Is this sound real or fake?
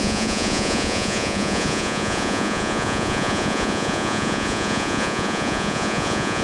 fake